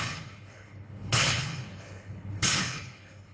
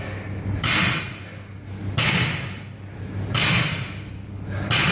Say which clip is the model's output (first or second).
first